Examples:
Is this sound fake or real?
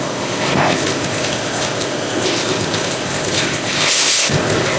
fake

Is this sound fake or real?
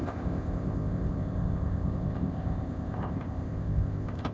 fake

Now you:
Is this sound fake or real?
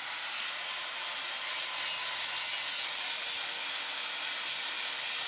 real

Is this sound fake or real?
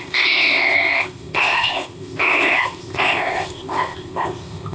fake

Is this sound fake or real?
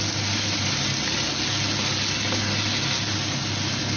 real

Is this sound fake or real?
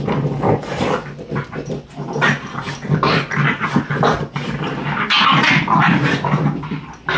real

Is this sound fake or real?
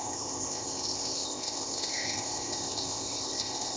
fake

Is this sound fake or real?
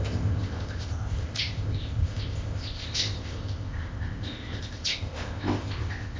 fake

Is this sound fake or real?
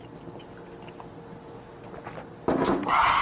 real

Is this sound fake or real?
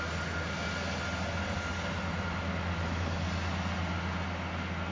real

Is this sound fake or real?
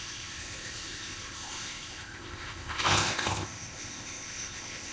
fake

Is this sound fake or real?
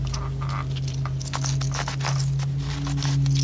real